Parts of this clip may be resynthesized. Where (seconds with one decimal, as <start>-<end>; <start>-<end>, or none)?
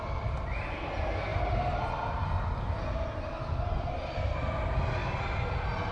none